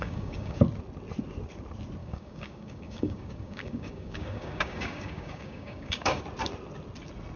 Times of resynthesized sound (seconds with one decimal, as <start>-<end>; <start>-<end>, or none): 0.0-0.6; 2.0-6.2